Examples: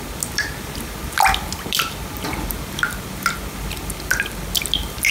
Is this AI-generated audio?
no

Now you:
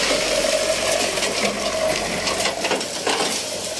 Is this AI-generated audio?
no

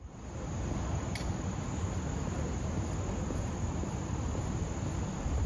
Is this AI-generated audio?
no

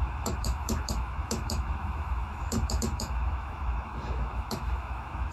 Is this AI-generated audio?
yes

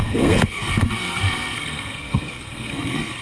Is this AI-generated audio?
yes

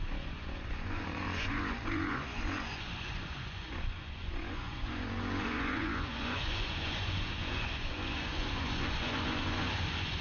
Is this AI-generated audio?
yes